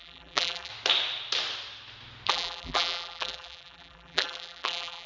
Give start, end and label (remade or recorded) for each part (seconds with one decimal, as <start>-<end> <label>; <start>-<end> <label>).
0.0-0.7 remade; 0.7-2.3 recorded; 2.3-5.1 remade